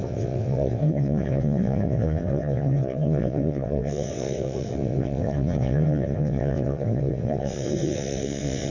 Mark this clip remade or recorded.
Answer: remade